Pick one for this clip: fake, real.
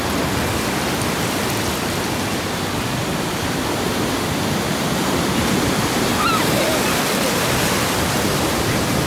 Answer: fake